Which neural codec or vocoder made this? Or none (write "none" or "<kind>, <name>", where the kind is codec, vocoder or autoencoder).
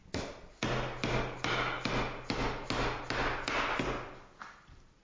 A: none